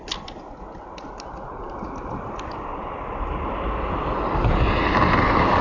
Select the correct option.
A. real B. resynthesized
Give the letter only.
A